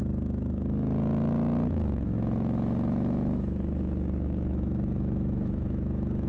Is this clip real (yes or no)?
no